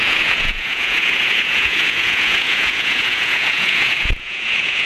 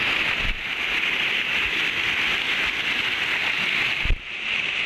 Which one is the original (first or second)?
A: second